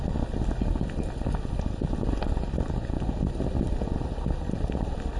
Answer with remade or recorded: recorded